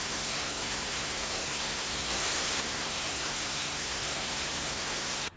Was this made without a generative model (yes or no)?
no